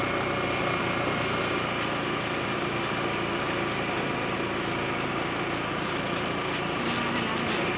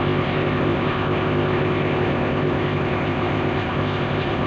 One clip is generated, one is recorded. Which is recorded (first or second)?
first